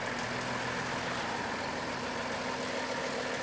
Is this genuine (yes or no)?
yes